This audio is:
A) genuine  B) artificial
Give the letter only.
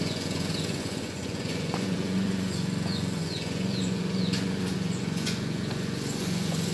B